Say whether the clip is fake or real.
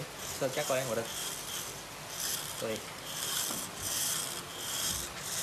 fake